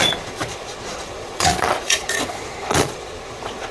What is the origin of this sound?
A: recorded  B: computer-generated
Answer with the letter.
B